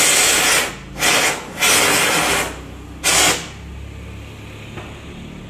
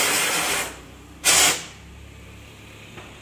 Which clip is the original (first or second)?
first